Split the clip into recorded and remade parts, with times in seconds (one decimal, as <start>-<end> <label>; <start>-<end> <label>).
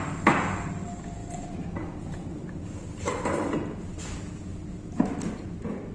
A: 0.0-5.9 recorded